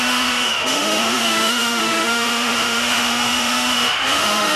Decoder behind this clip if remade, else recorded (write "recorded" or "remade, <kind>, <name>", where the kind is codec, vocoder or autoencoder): remade, autoencoder, DAC-VAE